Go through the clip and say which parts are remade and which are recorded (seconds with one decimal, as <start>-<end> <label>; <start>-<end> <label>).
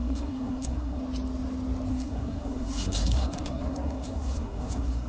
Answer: 0.0-1.0 remade; 1.0-1.9 recorded; 1.9-5.1 remade